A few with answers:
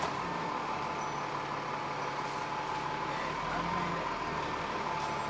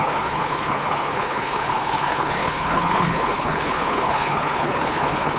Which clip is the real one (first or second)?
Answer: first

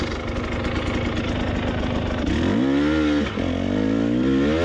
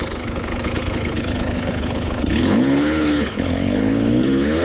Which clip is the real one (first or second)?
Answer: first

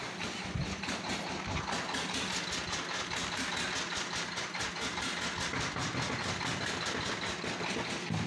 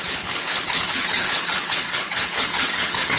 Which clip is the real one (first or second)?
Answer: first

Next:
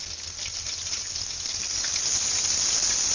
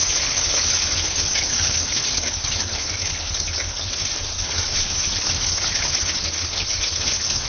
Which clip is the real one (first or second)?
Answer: first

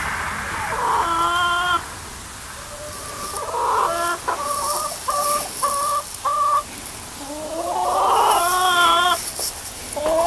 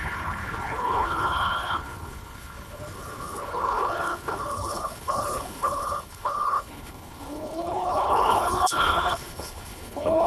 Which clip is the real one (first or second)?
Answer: first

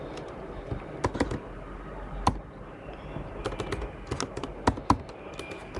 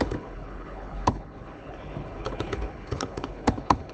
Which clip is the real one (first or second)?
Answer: first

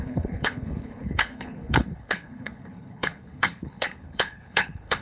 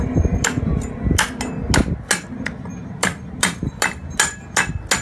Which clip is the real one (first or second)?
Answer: second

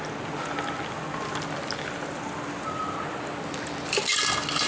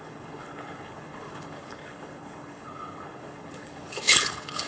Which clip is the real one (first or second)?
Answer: first